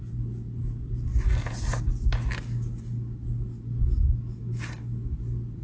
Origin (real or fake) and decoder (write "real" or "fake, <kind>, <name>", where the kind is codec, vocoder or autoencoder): real